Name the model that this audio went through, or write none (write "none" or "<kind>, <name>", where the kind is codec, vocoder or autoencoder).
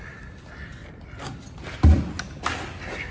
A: none